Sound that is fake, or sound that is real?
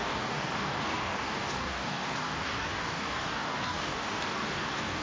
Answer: fake